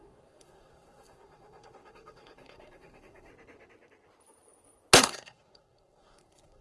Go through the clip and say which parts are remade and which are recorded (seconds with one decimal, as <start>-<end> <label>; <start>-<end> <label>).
0.0-3.3 remade; 3.3-5.0 recorded; 5.0-6.6 remade